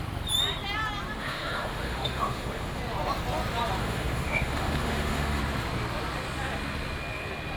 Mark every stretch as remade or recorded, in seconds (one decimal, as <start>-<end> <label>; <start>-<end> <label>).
0.0-1.2 recorded; 1.2-2.8 remade; 2.8-3.8 recorded; 3.8-5.4 remade; 5.4-7.6 recorded